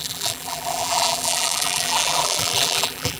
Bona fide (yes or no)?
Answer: no